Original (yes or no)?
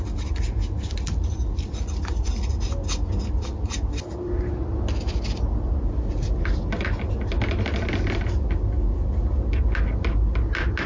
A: yes